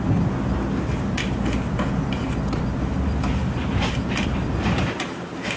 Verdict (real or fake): real